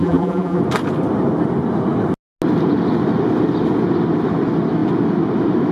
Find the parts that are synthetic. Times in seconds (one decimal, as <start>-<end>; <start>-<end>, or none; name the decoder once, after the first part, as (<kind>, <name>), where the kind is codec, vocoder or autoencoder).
0.0-0.6 (vocoder, BigVGAN v2)